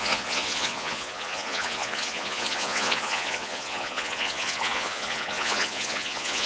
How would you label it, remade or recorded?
remade